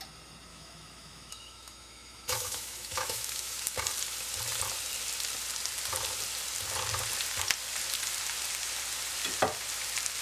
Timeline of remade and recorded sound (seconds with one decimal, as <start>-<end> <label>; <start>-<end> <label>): 0.0-0.5 recorded; 0.5-3.8 remade; 3.8-10.2 recorded